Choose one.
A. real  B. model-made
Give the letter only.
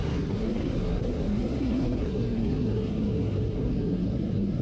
B